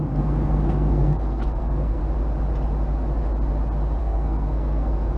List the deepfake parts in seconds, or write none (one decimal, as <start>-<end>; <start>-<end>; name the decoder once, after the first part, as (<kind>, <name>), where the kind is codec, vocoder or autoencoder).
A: 0.0-2.0 (codec, SNAC); 4.0-5.2